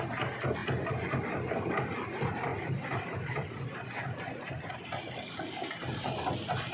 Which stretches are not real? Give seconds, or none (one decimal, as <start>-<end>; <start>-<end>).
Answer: none